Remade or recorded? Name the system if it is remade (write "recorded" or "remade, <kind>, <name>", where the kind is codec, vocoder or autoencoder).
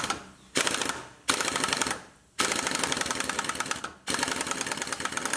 recorded